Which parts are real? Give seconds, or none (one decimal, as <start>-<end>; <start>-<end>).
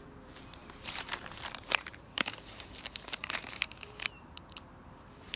none